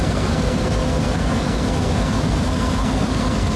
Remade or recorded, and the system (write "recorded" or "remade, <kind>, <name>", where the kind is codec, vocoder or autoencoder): remade, codec, SNAC